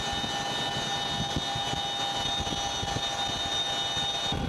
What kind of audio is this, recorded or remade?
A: recorded